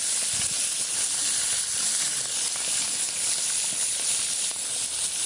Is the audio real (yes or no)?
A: yes